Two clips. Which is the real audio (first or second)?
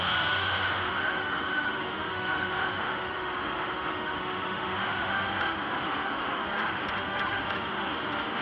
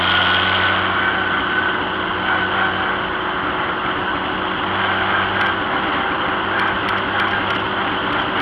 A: second